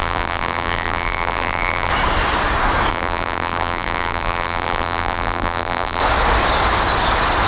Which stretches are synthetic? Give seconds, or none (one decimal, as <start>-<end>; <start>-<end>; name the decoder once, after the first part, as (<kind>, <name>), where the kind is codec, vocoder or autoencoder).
0.0-1.9 (vocoder, BigVGAN v2); 2.9-6.0